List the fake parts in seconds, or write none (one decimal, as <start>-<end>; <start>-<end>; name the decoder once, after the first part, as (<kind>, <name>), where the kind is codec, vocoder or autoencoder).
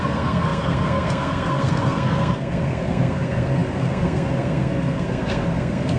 0.0-6.0 (codec, SNAC)